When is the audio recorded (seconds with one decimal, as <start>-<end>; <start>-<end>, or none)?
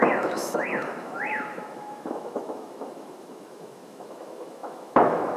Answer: none